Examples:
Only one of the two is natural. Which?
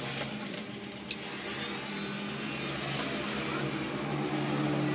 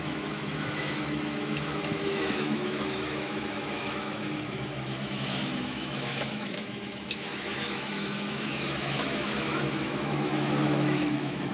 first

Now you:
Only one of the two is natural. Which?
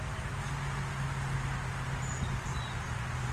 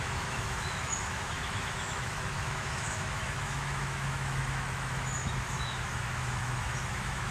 first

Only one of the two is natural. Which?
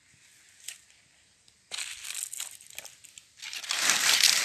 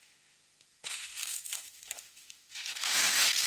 first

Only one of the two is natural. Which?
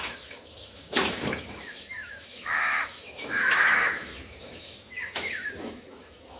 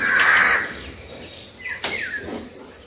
second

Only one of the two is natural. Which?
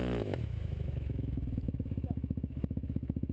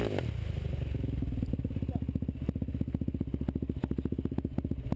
second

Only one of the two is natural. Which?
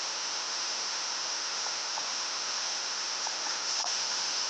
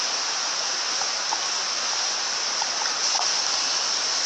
second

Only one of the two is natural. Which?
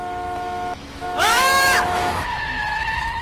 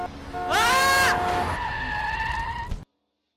second